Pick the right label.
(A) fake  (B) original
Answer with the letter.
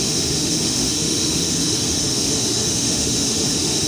A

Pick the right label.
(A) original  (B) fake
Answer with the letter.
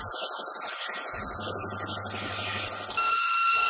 A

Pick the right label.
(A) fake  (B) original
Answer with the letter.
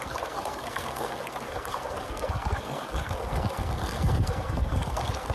A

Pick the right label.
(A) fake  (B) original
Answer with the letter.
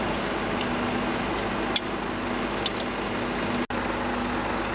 B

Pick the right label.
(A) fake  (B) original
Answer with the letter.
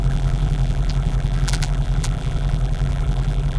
A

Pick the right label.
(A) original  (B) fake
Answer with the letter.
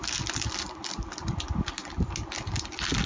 A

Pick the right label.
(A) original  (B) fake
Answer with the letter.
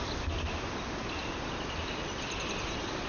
A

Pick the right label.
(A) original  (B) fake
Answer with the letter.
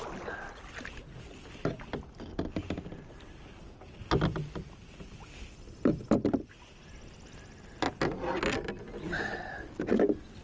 A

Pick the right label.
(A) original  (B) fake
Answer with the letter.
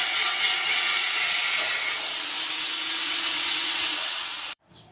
B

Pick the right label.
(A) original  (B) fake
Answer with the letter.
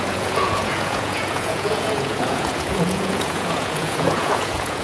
B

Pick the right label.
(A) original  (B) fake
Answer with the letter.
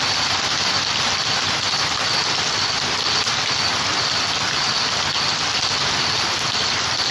A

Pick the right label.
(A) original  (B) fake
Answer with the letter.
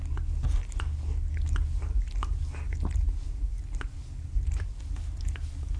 A